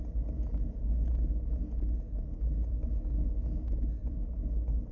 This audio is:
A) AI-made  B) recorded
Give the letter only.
B